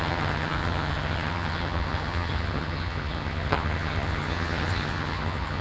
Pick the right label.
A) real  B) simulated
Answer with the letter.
B